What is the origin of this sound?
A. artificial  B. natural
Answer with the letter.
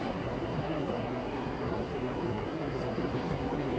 A